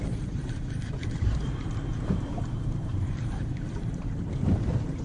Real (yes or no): no